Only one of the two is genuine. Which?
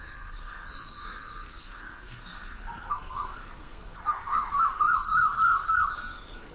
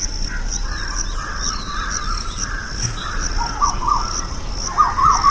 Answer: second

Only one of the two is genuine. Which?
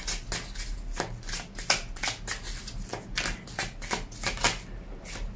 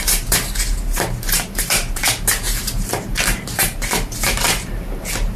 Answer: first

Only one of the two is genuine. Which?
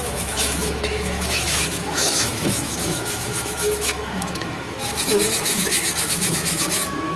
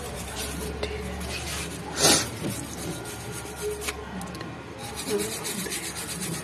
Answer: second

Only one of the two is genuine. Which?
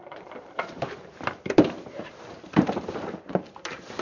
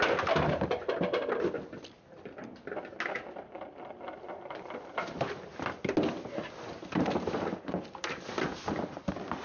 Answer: second